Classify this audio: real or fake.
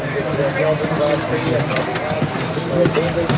real